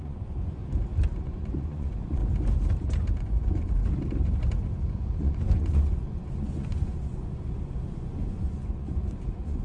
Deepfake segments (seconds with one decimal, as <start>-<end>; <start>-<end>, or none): 0.0-0.6; 1.2-2.2; 3.2-3.8; 5.2-9.6